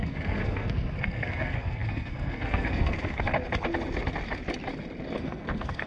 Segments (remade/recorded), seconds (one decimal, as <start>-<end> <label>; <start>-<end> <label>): 0.0-3.3 remade; 3.3-5.2 recorded; 5.2-5.9 remade